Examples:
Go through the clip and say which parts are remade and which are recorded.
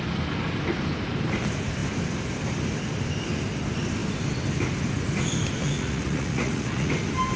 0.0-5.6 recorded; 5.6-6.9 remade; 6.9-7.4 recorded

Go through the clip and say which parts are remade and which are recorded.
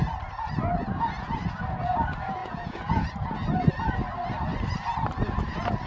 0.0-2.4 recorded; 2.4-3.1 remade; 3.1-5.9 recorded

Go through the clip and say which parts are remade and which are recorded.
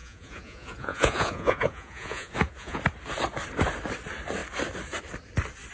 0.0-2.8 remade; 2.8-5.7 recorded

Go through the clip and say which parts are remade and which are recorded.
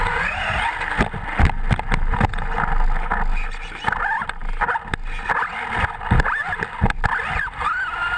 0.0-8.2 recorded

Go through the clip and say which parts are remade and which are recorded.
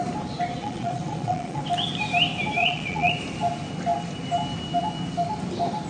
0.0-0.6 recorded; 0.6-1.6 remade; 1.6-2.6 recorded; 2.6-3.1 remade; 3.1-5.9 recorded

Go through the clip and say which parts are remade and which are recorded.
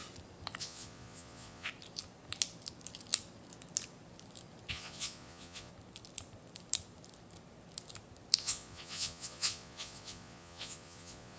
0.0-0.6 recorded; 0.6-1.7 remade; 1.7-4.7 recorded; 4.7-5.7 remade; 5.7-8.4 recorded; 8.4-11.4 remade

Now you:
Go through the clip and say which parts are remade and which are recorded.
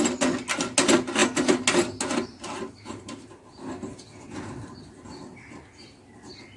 0.0-6.6 recorded